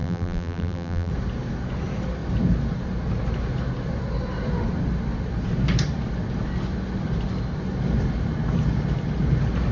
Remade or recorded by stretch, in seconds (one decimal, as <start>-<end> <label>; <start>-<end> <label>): 0.0-1.1 remade; 1.1-9.7 recorded